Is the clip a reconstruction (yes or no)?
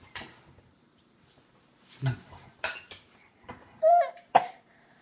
yes